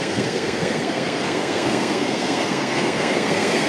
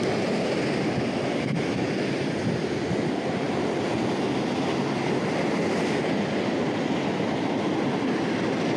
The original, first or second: second